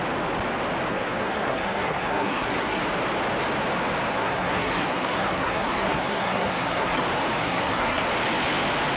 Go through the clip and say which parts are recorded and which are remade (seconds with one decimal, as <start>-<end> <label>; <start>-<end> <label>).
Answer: 0.0-0.9 recorded; 0.9-2.8 remade; 2.8-4.1 recorded; 4.1-7.0 remade; 7.0-7.4 recorded; 7.4-8.0 remade; 8.0-9.0 recorded